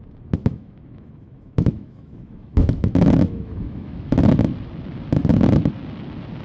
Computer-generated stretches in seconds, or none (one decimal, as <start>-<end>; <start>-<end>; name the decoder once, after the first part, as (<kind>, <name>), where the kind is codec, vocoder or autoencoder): 0.4-4.2 (autoencoder, DAC-VAE)

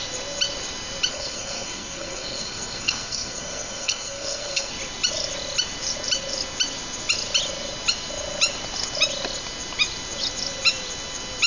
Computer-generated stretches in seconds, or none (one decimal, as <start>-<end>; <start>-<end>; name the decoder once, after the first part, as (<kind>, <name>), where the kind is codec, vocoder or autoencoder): 1.1-4.7 (codec, SNAC)

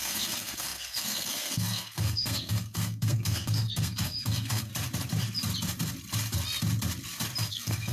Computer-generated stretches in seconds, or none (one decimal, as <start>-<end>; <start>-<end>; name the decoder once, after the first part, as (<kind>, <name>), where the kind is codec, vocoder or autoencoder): 0.0-4.7 (codec, SNAC); 7.5-7.9

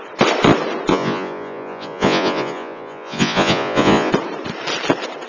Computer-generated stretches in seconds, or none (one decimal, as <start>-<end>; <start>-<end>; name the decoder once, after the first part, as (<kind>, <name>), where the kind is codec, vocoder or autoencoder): 0.9-4.1 (vocoder, Vocos)

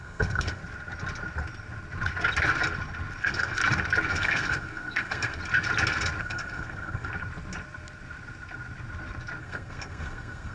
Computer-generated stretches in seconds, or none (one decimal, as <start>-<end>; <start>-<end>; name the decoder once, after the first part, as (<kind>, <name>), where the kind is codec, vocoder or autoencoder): 0.0-0.6 (codec, SNAC); 3.2-3.6; 4.1-5.4; 6.2-7.1; 9.4-10.5

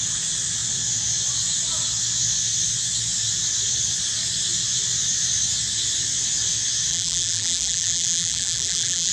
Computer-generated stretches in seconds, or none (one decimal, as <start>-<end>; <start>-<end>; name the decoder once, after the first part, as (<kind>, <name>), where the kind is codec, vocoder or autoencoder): 6.9-9.1 (vocoder, BigVGAN v2)

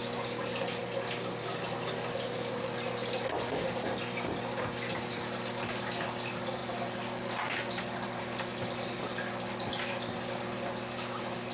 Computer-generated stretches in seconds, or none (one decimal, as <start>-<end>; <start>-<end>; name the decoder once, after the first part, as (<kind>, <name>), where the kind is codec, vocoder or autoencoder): none

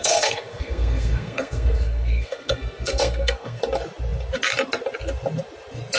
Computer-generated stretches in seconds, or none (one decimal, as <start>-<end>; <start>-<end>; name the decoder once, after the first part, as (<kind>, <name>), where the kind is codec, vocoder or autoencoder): 0.0-3.6 (codec, SNAC)